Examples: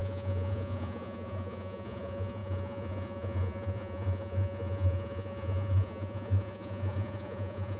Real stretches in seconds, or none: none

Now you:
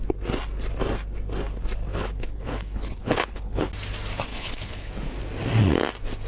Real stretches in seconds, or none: 0.0-1.9; 3.7-4.3; 4.9-6.3

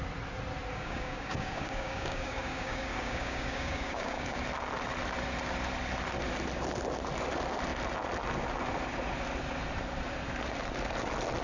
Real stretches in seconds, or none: 0.0-0.7; 4.4-11.4